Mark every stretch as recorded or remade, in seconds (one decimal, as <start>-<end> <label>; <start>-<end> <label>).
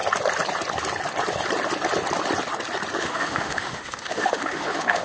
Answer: 0.0-3.0 recorded; 3.0-5.0 remade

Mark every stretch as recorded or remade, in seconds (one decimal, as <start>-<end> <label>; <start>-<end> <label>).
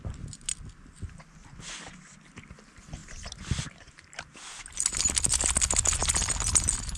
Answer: 0.0-7.0 recorded